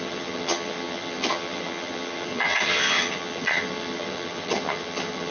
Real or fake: fake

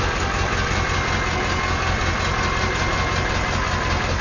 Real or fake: real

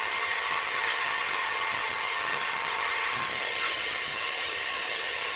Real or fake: fake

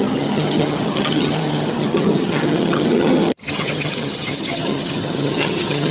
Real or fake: fake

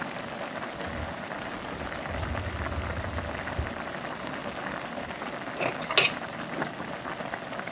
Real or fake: real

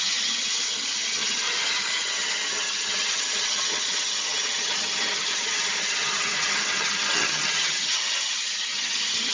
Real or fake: fake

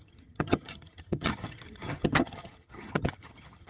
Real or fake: fake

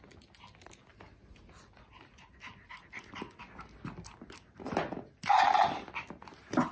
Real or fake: real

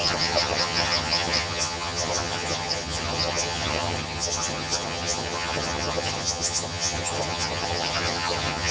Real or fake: fake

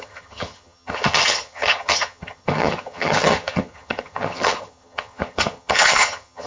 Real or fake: fake